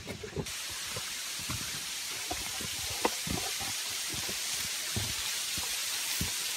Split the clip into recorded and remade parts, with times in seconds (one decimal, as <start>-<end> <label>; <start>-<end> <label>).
0.0-4.1 remade; 4.1-5.3 recorded; 5.3-5.8 remade; 5.8-6.6 recorded